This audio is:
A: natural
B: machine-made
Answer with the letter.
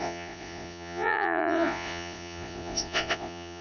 B